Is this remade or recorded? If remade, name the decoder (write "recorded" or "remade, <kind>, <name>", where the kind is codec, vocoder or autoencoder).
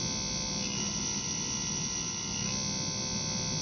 recorded